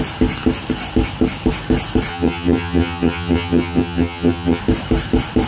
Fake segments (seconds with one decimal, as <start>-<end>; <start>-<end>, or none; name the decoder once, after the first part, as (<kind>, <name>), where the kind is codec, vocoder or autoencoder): 2.1-4.6 (vocoder, HiFi-GAN)